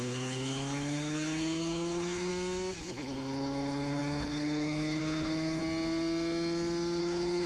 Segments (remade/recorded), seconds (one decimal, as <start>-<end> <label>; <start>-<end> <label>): 0.0-2.3 remade; 2.3-2.8 recorded; 2.8-5.6 remade; 5.6-7.0 recorded; 7.0-7.5 remade